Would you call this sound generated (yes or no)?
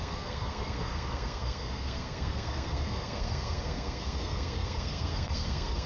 yes